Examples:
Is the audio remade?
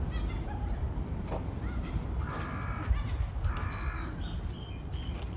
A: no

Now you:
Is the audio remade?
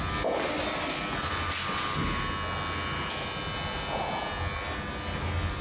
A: no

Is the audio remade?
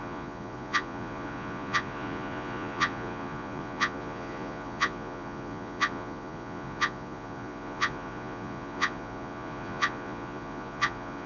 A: yes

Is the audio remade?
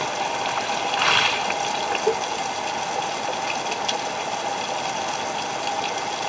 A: no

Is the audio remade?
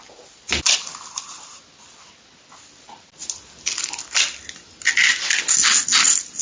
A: no